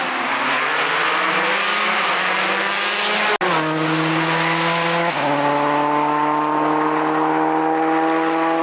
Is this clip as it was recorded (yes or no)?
yes